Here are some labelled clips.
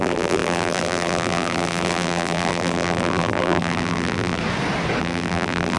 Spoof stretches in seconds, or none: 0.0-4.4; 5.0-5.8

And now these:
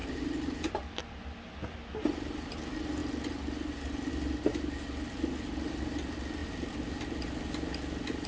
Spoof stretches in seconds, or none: 0.0-1.0; 6.4-7.0

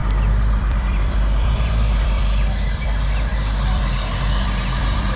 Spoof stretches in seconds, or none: 0.0-5.2

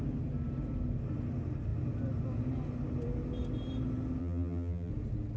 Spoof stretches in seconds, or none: 4.2-4.9

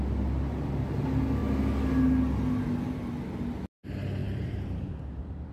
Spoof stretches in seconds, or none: 4.2-5.5

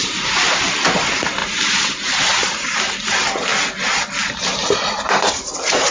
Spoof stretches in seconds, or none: 1.4-2.5